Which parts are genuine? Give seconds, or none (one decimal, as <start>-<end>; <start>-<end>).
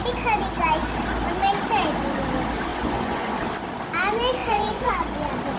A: 0.0-2.7; 3.4-4.4; 4.9-5.6